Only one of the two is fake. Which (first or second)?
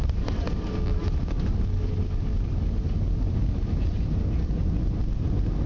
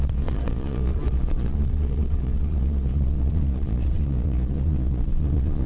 second